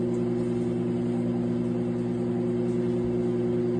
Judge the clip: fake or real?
real